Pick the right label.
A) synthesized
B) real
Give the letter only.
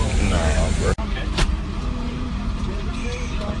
A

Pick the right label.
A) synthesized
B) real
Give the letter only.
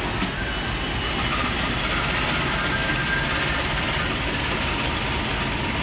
B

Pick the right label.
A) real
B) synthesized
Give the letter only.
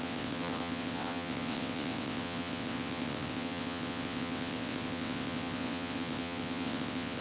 B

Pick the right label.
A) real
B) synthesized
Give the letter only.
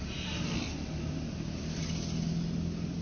A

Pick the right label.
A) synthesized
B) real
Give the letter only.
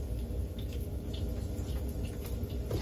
B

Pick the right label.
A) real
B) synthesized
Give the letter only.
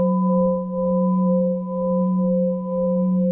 B